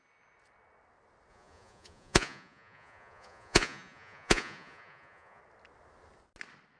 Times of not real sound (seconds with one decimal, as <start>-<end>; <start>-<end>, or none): 1.3-5.4